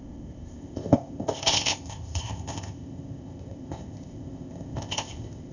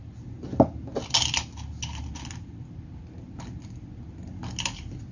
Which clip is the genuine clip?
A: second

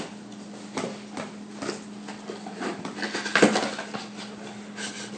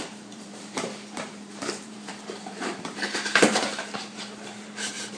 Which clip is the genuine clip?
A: first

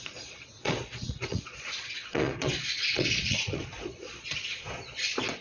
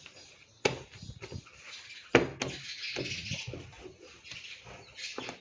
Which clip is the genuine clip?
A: second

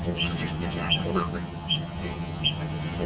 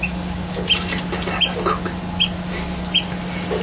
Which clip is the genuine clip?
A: second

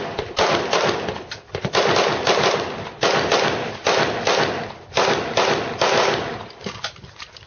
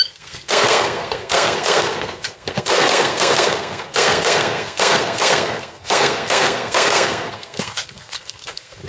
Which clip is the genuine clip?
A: first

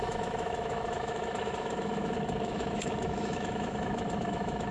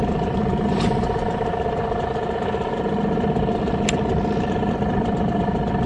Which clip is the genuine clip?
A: second